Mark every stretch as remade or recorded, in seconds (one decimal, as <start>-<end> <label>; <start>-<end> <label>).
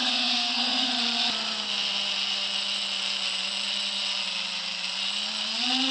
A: 0.0-0.9 remade; 0.9-5.9 recorded